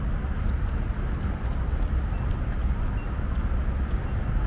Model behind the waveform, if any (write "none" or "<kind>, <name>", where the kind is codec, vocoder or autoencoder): none